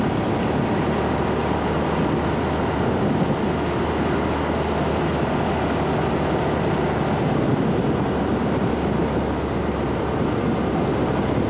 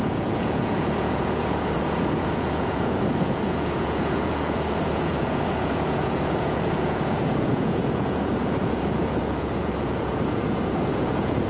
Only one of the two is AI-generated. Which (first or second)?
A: second